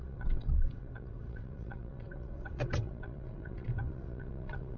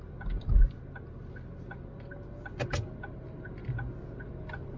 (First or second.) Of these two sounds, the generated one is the first